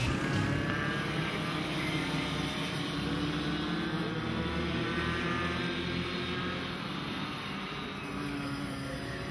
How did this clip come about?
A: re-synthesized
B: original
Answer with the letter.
B